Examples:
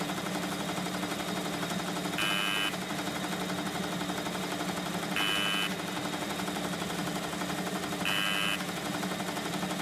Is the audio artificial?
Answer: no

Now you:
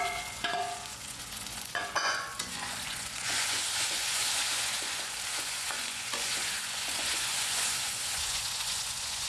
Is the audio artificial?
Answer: yes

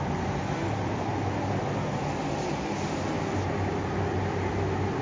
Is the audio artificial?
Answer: no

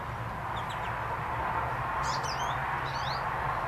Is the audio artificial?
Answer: no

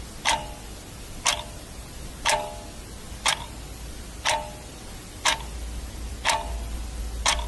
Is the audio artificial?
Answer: no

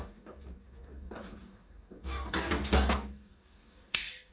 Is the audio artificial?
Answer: yes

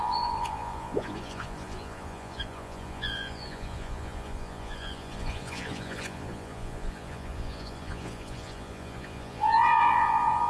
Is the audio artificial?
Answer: yes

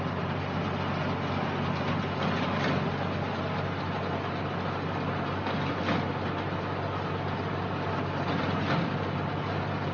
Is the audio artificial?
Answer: no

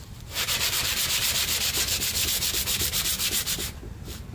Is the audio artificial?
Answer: yes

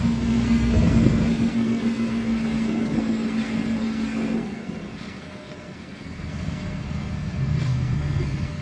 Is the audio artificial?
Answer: yes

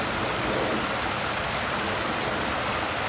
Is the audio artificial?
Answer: no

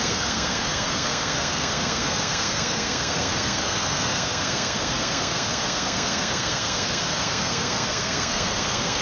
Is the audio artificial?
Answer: yes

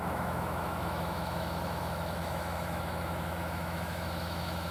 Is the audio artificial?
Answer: yes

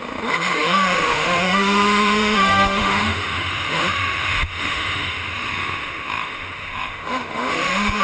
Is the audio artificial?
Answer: yes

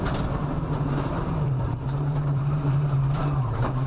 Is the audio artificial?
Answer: yes